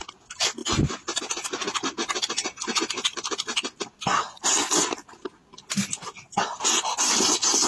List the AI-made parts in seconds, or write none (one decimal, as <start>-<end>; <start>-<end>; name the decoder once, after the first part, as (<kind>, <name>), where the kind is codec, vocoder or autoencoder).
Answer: 0.6-1.2 (vocoder, BigVGAN v2)